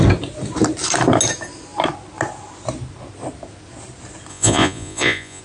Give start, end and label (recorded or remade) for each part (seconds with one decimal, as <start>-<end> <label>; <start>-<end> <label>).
0.0-4.3 recorded; 4.3-5.4 remade